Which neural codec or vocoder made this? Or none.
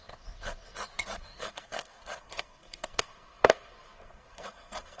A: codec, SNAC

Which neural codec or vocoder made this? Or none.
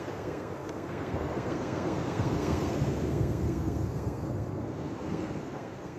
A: codec, SNAC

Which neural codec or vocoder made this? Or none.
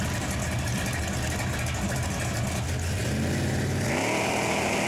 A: none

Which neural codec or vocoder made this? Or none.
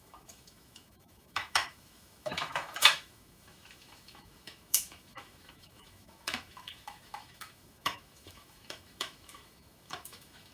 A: autoencoder, DAC-VAE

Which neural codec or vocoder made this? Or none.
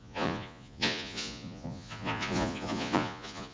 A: vocoder, Vocos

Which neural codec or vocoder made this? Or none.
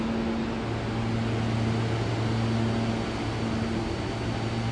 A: none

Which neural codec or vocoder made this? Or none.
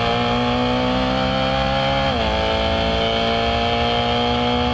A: none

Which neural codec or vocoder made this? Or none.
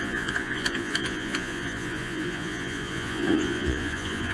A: vocoder, Vocos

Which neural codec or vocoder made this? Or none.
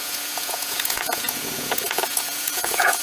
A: vocoder, Vocos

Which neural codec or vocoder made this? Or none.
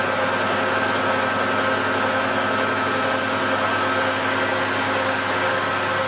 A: none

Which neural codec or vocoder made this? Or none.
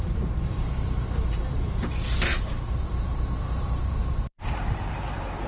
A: vocoder, BigVGAN v2